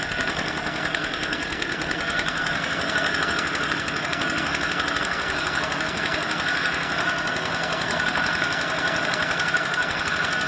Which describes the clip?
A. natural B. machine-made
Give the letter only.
B